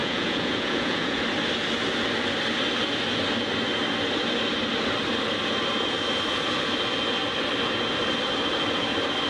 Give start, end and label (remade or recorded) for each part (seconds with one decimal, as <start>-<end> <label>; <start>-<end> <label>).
0.0-1.2 remade; 1.2-9.3 recorded